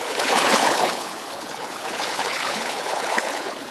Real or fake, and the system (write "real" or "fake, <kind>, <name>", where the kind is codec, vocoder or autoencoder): fake, codec, HILCodec